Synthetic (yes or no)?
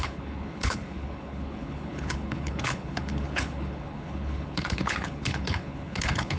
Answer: yes